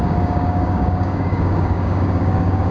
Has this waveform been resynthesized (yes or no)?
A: yes